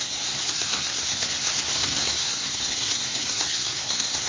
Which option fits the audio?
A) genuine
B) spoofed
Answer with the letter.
B